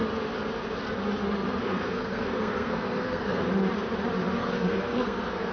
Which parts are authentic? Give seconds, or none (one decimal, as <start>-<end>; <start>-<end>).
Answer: 0.0-1.6; 3.5-4.4